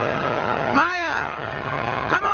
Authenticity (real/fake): fake